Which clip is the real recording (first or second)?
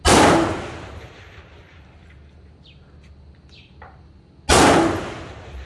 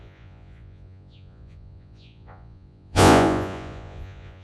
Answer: first